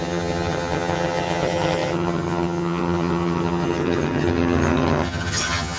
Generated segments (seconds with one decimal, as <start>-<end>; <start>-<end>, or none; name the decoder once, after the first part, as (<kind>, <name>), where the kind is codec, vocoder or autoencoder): 0.0-5.8 (vocoder, HiFi-GAN)